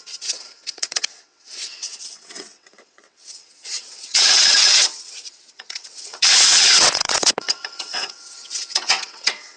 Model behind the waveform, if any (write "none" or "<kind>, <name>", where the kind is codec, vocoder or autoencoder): vocoder, WaveNeXt